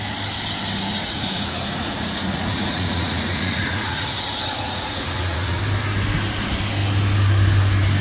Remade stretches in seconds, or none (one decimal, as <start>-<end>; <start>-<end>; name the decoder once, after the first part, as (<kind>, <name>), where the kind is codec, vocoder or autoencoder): 0.9-5.6 (vocoder, Vocos)

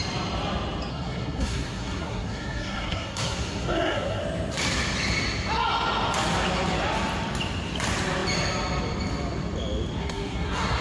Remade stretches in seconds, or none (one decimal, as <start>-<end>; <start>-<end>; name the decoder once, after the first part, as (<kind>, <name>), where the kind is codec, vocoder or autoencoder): 0.9-4.2 (codec, SNAC); 10.0-10.8

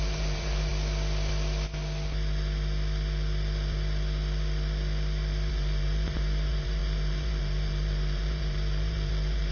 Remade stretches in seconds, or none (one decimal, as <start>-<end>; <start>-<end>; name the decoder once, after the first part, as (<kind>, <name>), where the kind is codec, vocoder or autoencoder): 0.0-0.7 (vocoder, BigVGAN v2); 5.5-9.5

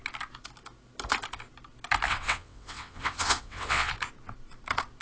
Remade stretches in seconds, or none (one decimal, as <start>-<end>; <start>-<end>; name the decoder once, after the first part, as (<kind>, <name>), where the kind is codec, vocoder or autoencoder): 2.1-3.9 (vocoder, WaveNeXt)

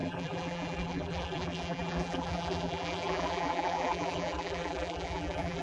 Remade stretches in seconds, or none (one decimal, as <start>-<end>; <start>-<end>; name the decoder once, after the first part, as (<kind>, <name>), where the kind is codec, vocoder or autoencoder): 0.0-5.6 (vocoder, BigVGAN v2)

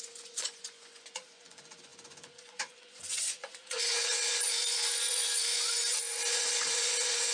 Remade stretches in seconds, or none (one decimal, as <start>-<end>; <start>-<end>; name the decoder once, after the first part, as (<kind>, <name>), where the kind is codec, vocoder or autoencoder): 0.0-7.3 (vocoder, Vocos)

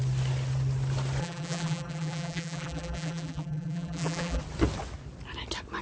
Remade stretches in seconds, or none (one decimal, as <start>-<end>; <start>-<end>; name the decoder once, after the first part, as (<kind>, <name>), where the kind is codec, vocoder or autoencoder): 1.2-4.4 (vocoder, BigVGAN v2)